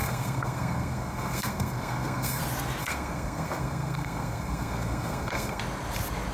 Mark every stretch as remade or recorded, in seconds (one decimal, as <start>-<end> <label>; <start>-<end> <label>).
0.0-2.4 remade; 2.4-2.8 recorded; 2.8-5.6 remade; 5.6-6.3 recorded